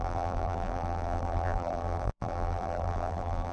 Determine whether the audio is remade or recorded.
remade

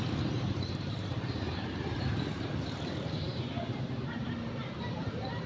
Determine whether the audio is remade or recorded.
remade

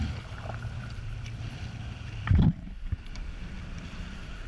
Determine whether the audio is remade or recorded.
recorded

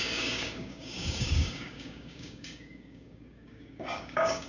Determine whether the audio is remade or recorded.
remade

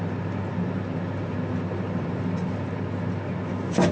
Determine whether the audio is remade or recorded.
recorded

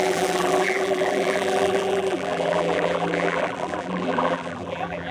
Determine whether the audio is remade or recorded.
remade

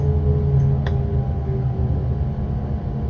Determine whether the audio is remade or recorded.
recorded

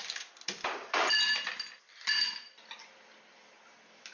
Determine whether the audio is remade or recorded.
recorded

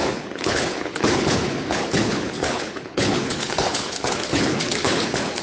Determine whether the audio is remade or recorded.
remade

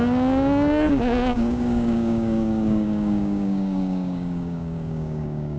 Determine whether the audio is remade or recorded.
remade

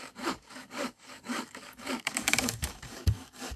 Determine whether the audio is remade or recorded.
remade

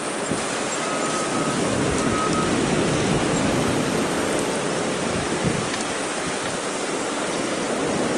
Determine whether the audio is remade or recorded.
recorded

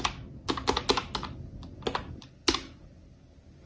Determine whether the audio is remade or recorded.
recorded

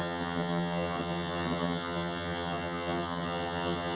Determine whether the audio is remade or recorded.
remade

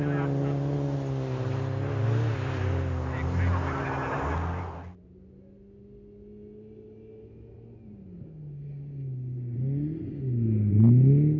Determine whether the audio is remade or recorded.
recorded